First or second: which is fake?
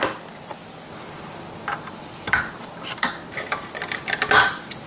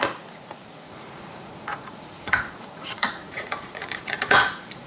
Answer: second